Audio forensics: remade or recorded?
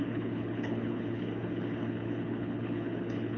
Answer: remade